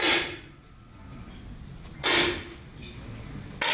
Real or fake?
real